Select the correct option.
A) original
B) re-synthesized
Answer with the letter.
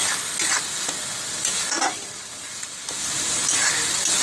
A